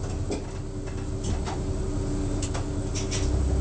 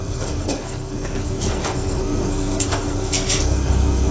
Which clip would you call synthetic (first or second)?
second